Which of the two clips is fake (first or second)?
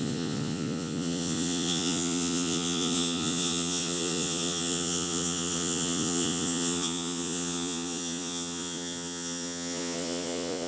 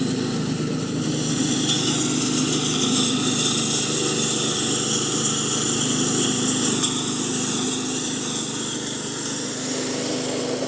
first